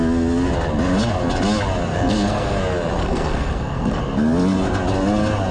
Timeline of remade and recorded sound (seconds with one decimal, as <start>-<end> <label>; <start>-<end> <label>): 0.0-1.9 recorded; 1.9-2.6 remade; 2.6-3.0 recorded; 3.0-4.0 remade; 4.0-5.5 recorded